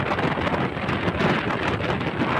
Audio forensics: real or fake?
real